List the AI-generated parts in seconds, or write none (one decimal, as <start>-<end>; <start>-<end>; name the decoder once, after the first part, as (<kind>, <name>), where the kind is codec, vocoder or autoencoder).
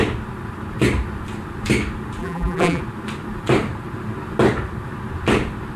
2.2-2.8 (vocoder, BigVGAN v2)